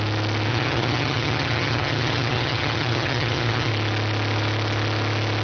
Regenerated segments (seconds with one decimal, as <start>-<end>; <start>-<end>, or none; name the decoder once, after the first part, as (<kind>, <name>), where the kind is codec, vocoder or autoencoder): 0.5-3.7 (vocoder, HiFi-GAN)